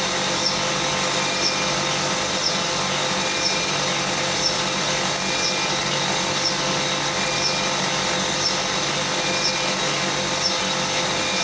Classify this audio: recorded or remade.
recorded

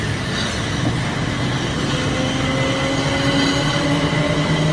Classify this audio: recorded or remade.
recorded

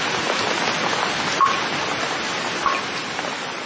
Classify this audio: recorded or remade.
recorded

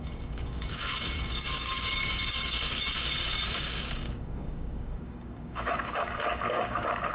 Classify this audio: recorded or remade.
remade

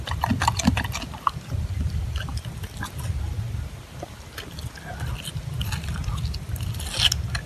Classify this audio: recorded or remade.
recorded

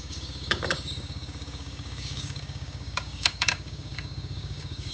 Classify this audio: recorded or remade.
remade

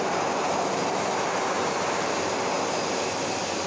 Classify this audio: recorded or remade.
recorded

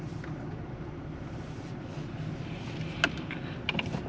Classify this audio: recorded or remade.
recorded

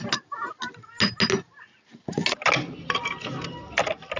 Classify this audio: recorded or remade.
recorded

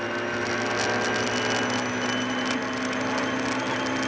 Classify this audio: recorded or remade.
recorded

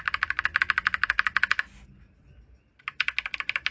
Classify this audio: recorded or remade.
recorded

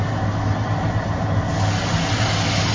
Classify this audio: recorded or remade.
recorded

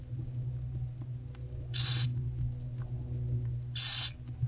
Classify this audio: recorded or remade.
recorded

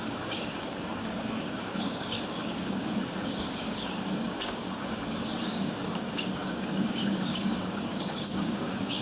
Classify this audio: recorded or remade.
remade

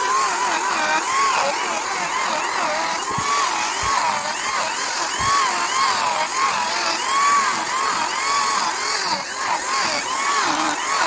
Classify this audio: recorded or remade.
recorded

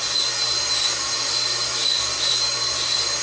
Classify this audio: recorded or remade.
recorded